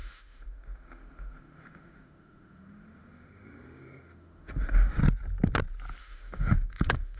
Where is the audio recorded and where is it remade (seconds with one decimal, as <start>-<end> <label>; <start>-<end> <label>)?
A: 0.0-5.0 remade; 5.0-6.0 recorded; 6.0-7.2 remade